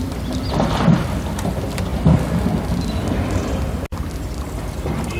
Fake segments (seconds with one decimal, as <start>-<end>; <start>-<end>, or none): none

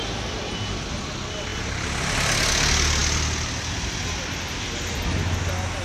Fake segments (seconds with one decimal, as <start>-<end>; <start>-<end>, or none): none

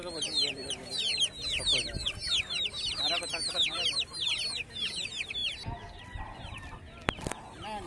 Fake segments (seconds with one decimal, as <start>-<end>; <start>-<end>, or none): none

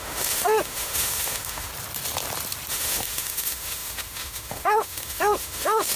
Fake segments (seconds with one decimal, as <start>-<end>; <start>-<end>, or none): 0.0-1.7; 2.7-6.0

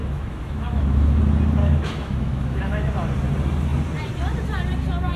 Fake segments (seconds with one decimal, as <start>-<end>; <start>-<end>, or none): 0.0-1.2; 1.6-2.9

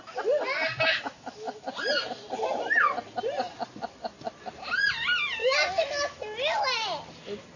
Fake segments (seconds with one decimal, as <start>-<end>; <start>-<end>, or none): 0.9-1.6; 5.4-6.2